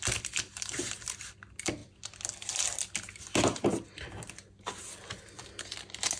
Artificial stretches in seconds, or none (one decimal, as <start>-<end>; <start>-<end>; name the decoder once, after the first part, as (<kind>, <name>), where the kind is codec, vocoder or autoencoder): none